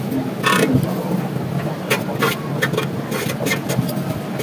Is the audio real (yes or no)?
yes